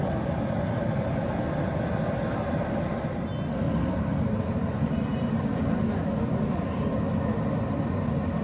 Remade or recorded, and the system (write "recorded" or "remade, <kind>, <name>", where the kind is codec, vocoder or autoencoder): recorded